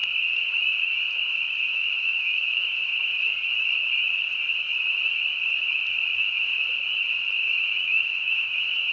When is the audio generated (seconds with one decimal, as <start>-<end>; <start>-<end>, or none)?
1.7-3.2; 6.1-6.5; 7.4-8.9